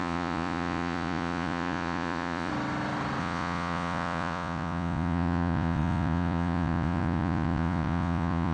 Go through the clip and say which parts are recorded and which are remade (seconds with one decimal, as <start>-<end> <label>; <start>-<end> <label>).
0.0-2.5 remade; 2.5-3.2 recorded; 3.2-8.5 remade